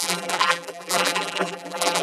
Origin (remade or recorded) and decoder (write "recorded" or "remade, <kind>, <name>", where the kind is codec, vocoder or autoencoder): remade, vocoder, BigVGAN v2